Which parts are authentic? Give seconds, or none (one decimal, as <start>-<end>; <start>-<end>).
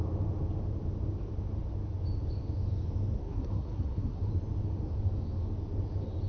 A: 0.0-3.2; 4.3-6.3